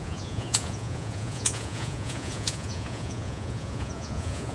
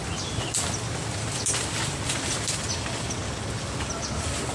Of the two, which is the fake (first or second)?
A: first